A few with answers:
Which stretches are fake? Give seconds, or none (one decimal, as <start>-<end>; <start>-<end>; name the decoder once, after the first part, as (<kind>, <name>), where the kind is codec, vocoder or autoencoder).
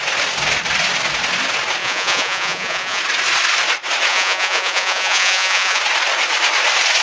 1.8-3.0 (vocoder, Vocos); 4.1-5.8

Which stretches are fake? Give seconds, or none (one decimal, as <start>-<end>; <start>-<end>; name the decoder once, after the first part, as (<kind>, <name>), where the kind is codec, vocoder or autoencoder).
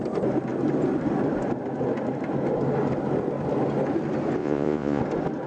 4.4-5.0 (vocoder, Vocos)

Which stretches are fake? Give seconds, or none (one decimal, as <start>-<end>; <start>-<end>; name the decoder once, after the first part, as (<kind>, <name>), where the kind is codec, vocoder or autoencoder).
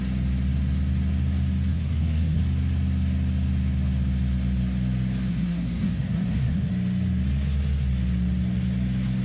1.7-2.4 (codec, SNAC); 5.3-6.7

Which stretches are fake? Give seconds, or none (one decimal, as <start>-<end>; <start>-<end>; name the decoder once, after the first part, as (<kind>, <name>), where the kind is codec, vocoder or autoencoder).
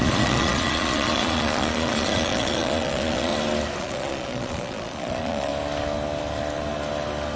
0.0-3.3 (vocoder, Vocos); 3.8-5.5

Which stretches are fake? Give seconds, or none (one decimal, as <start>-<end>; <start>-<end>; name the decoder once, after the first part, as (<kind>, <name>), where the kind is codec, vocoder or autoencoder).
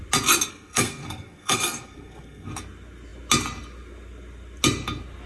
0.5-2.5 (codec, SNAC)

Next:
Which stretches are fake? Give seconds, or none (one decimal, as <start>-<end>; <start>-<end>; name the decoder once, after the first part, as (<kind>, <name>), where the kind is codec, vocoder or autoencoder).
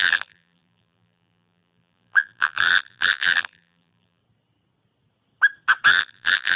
0.0-4.2 (vocoder, BigVGAN v2); 5.9-6.6